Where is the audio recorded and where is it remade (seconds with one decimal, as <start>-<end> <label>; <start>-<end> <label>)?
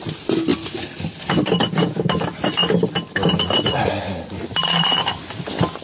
0.0-5.8 recorded